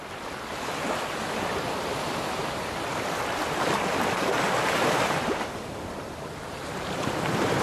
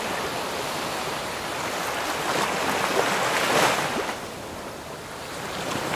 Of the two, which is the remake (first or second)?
first